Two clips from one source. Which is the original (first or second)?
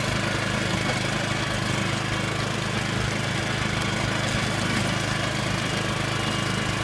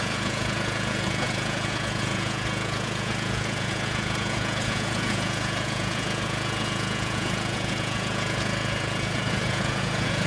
first